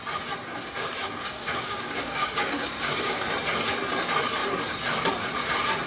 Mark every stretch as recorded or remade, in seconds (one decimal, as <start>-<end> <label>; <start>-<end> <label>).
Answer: 0.0-0.5 recorded; 0.5-3.3 remade; 3.3-5.9 recorded